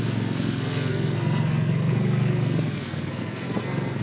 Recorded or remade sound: remade